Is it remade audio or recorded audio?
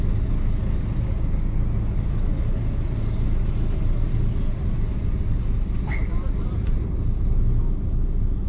recorded